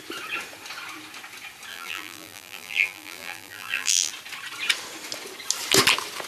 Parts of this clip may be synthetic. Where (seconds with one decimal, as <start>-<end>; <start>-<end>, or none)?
1.7-4.1